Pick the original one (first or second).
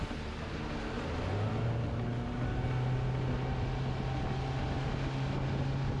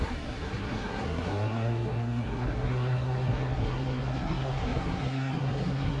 first